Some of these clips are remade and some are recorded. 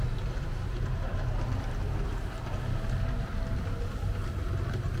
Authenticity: recorded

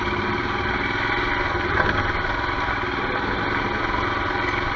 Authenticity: recorded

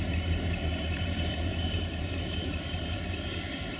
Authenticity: remade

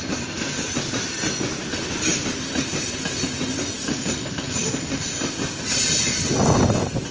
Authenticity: remade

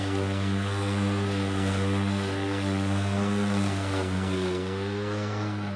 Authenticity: remade